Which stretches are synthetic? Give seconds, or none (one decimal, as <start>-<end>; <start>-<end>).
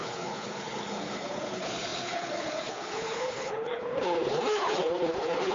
0.0-5.5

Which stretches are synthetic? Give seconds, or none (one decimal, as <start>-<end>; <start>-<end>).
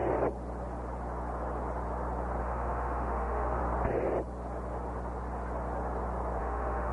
2.4-3.6; 6.4-6.9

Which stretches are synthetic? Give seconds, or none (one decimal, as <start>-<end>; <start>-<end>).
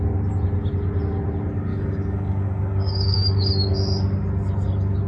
1.7-3.5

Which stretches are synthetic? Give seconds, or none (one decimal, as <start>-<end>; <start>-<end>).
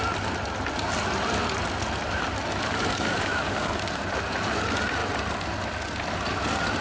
2.9-3.8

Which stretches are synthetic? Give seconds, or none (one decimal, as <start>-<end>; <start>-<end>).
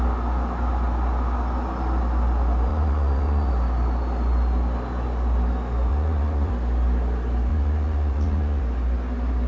2.7-3.5; 5.9-6.5; 7.5-8.6